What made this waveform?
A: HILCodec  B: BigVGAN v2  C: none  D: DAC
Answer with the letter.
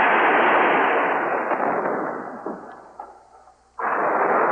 C